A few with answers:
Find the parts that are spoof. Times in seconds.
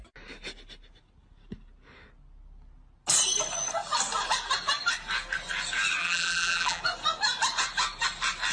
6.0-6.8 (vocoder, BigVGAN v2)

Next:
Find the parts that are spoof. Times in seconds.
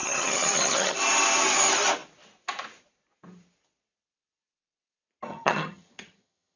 0.0-1.0 (vocoder, HiFi-GAN); 5.3-6.6